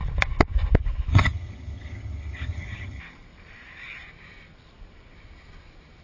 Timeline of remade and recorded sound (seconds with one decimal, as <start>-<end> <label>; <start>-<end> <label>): 0.0-1.1 recorded; 1.1-3.0 remade; 3.0-6.0 recorded